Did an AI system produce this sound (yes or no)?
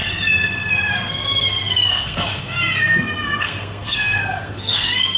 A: yes